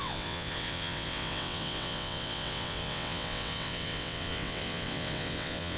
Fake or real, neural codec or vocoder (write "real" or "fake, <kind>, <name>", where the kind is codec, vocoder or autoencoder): fake, vocoder, WaveNeXt